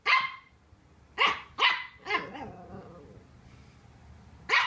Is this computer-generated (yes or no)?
no